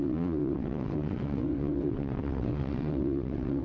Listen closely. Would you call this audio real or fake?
fake